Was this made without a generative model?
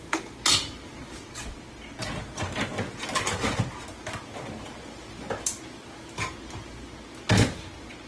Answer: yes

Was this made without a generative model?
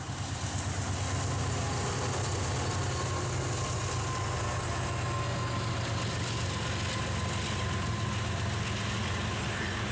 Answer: yes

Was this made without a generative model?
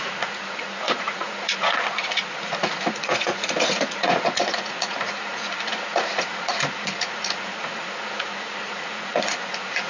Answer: no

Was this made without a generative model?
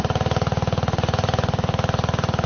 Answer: yes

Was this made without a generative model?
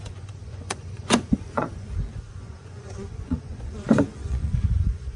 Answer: no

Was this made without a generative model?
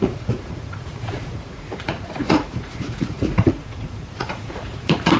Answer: no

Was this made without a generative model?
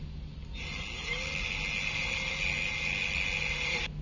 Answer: yes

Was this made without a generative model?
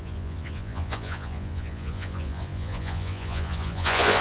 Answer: no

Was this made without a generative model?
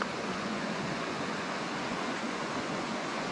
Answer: no